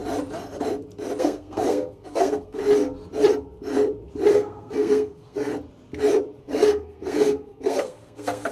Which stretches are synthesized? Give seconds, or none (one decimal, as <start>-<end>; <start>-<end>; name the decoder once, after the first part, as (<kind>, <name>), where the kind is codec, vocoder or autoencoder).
1.2-2.6 (codec, SNAC); 4.3-5.5; 6.4-8.5